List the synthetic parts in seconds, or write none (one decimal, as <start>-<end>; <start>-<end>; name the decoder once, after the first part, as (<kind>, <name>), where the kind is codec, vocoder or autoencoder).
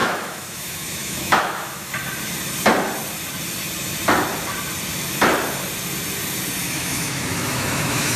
0.0-1.9 (autoencoder, DAC-VAE); 6.6-8.2